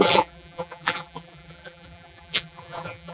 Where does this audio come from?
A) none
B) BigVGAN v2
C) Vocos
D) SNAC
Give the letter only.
B